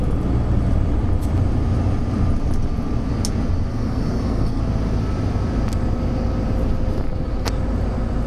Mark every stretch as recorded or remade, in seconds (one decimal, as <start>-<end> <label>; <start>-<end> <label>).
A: 0.0-3.7 recorded; 3.7-4.6 remade; 4.6-8.3 recorded